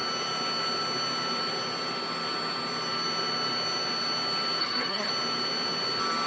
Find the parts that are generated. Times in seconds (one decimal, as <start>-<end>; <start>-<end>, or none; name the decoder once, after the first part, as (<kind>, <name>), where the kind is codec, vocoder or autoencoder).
4.6-5.1 (codec, SNAC)